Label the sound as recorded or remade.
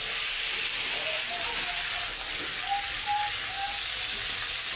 recorded